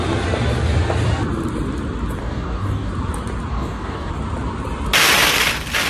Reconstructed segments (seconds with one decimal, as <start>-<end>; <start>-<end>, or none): 2.2-2.9; 3.5-4.1